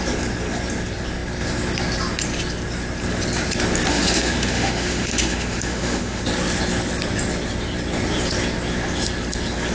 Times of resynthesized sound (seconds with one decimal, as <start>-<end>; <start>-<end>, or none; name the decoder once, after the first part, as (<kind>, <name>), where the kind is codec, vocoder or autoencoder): 3.9-6.2 (autoencoder, DAC-VAE)